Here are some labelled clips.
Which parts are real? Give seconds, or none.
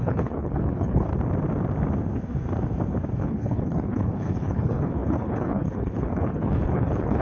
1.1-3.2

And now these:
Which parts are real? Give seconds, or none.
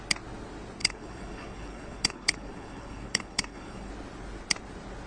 0.0-0.8; 3.9-5.1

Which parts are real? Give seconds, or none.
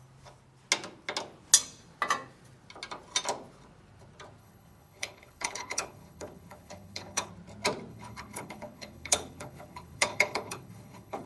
0.0-4.4; 7.3-7.9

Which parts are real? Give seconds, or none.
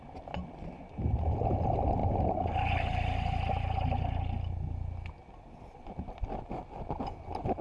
0.0-7.6